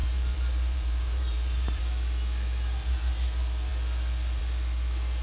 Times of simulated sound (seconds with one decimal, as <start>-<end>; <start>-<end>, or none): 0.0-1.8